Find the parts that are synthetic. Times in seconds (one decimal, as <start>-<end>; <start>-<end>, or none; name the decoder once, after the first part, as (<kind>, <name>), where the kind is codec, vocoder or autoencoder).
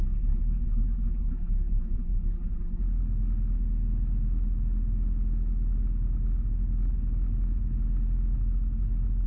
0.0-2.8 (vocoder, BigVGAN v2)